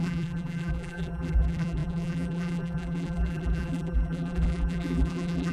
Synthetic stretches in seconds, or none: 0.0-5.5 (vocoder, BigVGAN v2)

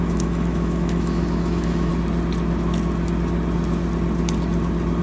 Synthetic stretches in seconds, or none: 0.0-1.9 (autoencoder, DAC-VAE)

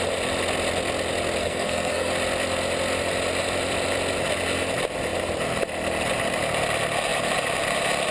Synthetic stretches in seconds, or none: 1.4-2.1 (codec, SNAC)

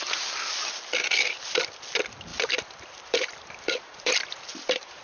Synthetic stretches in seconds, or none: 2.3-4.1 (vocoder, BigVGAN v2); 4.5-5.0

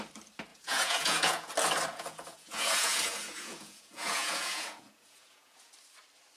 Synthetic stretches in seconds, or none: 0.5-1.5 (vocoder, Vocos); 1.9-5.7